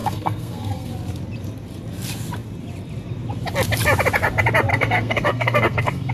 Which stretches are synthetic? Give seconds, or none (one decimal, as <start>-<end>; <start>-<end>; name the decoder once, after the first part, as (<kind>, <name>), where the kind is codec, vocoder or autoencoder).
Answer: 0.0-0.9 (codec, SNAC); 4.7-6.1